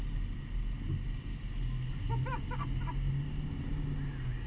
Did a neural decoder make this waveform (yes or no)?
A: no